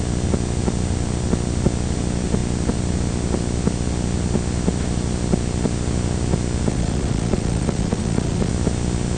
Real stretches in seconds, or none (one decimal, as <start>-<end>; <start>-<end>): 0.0-6.7; 8.5-9.2